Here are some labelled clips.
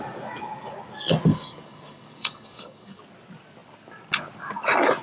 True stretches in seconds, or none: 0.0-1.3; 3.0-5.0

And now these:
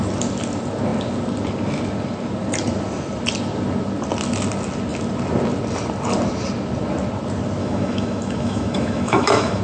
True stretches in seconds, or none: 0.0-7.6